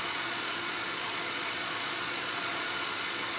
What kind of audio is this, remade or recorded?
remade